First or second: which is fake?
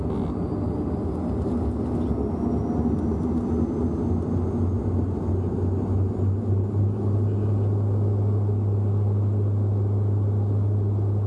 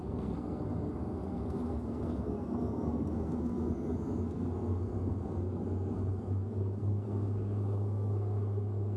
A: second